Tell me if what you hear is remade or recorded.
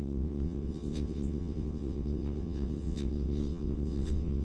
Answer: remade